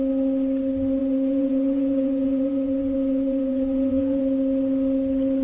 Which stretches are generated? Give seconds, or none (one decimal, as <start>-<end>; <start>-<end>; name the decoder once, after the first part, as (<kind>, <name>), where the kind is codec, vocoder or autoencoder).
1.0-4.2 (vocoder, Vocos)